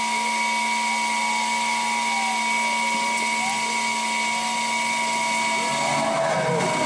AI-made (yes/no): no